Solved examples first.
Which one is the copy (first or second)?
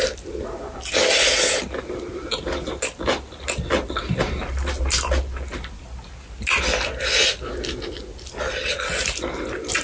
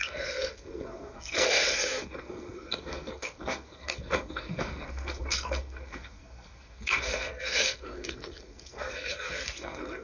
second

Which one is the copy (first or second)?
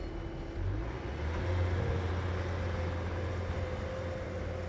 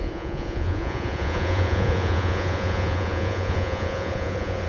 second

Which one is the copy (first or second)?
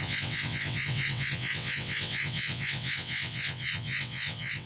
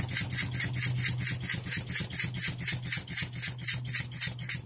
first